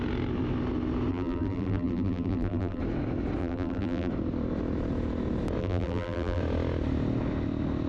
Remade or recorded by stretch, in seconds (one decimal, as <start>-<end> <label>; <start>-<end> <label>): 0.0-1.1 recorded; 1.1-2.8 remade; 2.8-3.4 recorded; 3.4-4.1 remade; 4.1-5.6 recorded; 5.6-6.4 remade; 6.4-7.9 recorded